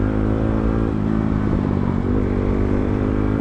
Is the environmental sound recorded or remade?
remade